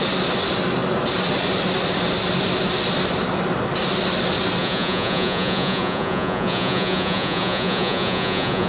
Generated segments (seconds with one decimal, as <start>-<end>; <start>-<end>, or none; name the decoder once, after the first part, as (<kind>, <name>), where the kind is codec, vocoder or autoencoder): 4.6-8.7 (vocoder, Vocos)

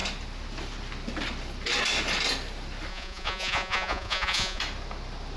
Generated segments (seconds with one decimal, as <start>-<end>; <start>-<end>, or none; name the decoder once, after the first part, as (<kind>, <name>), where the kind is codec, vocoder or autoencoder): 2.9-4.6 (vocoder, Vocos)